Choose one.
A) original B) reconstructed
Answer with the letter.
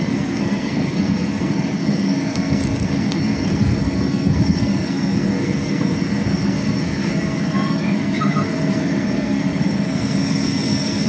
B